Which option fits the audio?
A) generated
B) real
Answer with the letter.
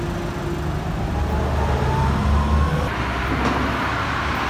B